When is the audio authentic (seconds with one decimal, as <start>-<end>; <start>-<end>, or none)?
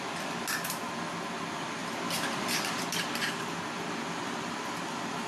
0.0-1.8; 2.8-5.3